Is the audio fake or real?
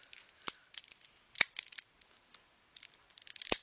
real